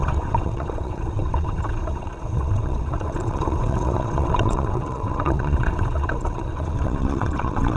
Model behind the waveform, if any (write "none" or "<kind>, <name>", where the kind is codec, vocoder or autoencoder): vocoder, WaveNeXt